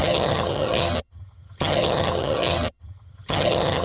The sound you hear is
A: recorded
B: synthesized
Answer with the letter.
B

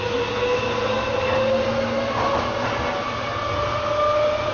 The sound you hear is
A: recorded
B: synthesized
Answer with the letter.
A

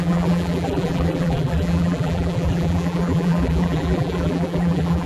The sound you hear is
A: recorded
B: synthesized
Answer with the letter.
B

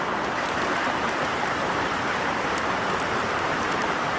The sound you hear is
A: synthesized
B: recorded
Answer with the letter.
A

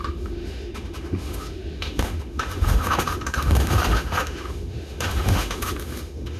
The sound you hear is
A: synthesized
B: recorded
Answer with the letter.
A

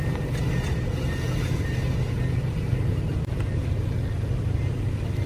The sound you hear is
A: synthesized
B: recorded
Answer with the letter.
B